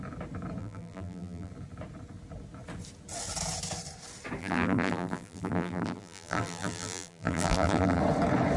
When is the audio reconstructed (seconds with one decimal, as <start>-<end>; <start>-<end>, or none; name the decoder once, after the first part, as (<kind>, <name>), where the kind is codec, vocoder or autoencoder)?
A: 0.6-1.5 (vocoder, BigVGAN v2); 4.4-8.0